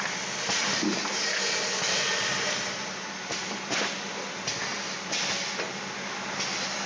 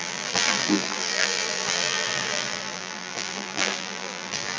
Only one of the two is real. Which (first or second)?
first